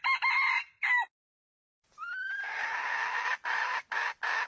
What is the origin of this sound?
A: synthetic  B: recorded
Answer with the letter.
B